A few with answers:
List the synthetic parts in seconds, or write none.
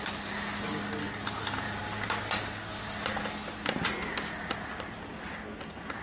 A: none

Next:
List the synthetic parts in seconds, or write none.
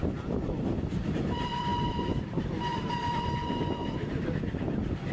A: 0.0-5.1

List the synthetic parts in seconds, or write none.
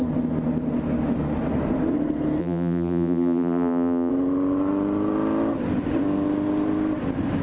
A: 2.4-4.1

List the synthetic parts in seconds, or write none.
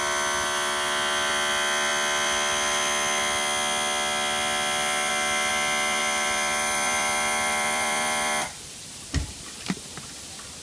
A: 6.0-10.1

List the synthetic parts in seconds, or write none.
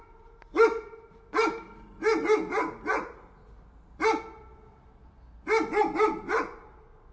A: none